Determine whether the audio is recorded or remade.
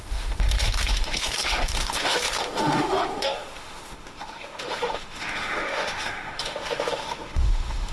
remade